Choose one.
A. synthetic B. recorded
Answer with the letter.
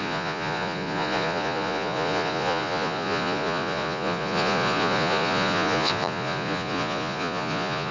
A